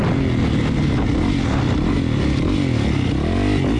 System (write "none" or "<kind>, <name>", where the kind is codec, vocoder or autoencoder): none